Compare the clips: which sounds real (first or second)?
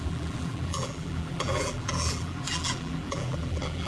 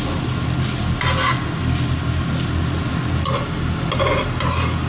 second